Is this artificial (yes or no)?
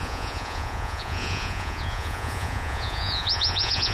yes